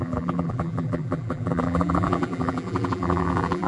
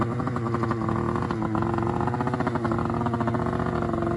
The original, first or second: second